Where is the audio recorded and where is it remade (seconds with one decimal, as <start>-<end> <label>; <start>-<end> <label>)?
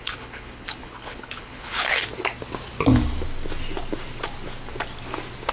0.0-2.0 remade; 2.0-5.5 recorded